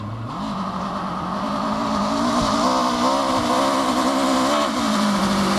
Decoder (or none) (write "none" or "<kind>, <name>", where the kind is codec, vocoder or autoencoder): none